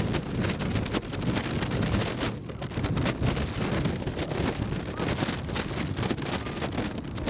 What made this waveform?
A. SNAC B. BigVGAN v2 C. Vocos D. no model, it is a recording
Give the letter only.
D